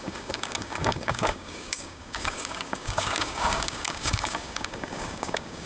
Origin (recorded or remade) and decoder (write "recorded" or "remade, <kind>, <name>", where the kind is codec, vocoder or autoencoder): remade, codec, DAC